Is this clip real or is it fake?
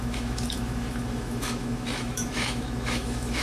fake